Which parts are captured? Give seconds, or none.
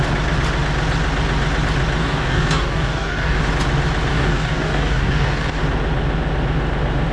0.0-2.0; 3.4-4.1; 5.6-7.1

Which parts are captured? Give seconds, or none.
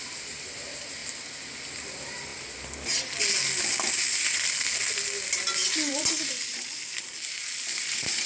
1.0-1.8; 2.3-5.9; 7.1-7.8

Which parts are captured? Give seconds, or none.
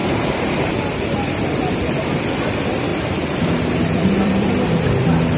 0.0-2.9; 4.7-5.4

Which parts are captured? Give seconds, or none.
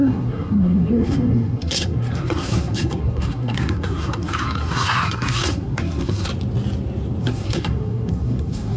6.3-7.2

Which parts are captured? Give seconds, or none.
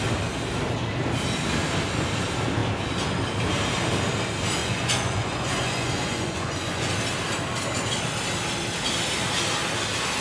0.0-4.6; 6.9-10.2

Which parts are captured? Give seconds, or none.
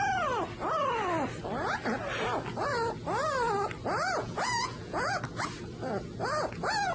0.0-4.2; 5.1-6.9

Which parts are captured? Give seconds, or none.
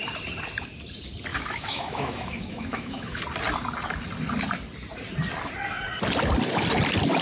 0.0-1.3; 3.2-7.2